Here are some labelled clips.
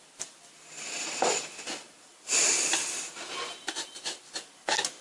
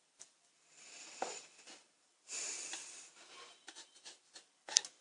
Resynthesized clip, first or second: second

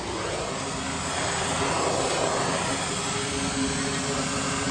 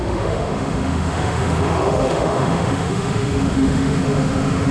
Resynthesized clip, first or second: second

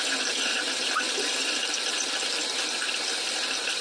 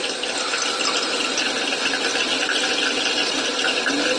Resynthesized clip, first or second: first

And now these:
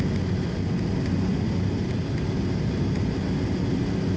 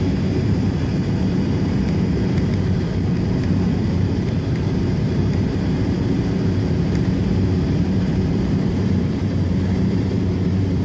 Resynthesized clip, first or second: second